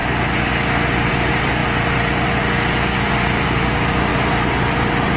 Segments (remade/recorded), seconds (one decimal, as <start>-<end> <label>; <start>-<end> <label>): 0.0-1.1 recorded; 1.1-1.6 remade; 1.6-3.3 recorded; 3.3-5.2 remade